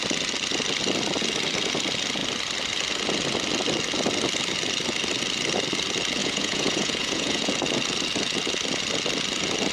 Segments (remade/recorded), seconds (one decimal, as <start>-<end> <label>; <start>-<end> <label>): 0.0-6.2 recorded; 6.2-7.5 remade; 7.5-9.7 recorded